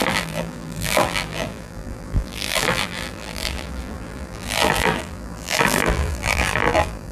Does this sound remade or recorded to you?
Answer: remade